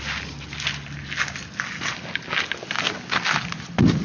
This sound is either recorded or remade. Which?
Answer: recorded